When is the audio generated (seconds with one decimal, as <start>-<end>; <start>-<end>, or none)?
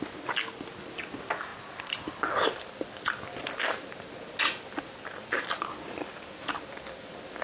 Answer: none